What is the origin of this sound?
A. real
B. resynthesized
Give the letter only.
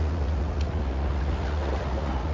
B